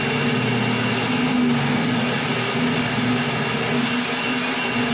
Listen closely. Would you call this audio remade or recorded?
recorded